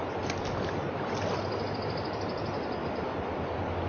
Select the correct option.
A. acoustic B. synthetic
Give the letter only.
A